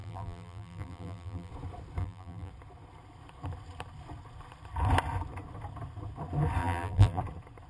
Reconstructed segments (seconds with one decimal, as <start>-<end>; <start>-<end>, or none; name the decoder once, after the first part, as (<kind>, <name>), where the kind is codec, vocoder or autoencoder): 0.0-1.5 (vocoder, BigVGAN v2); 2.0-2.5; 6.6-7.2